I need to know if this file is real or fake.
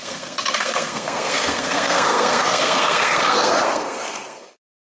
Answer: fake